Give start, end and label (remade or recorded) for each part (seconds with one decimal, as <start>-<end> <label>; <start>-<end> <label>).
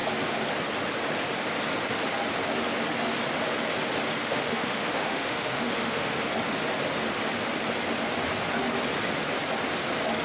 0.0-4.2 recorded; 4.2-6.2 remade; 6.2-10.2 recorded